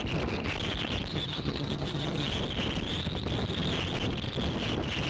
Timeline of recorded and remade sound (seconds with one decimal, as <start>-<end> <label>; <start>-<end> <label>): 0.0-1.1 recorded; 1.1-2.3 remade; 2.3-5.1 recorded